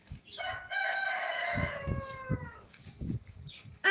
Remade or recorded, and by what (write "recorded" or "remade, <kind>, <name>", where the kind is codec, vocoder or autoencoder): remade, codec, DAC